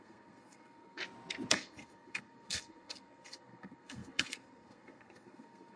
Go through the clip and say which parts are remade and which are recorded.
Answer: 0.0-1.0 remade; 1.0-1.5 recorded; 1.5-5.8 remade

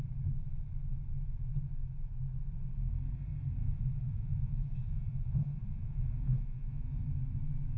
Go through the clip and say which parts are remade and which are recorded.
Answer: 0.0-3.6 recorded; 3.6-7.0 remade; 7.0-7.8 recorded